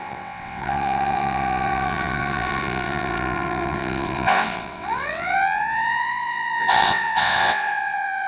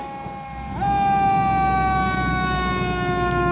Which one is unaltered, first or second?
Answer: second